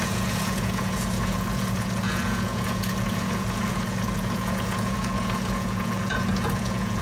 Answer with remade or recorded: remade